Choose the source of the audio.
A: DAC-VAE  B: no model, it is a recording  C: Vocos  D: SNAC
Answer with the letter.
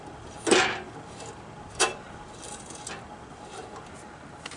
B